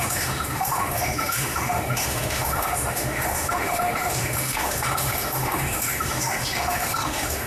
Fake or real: fake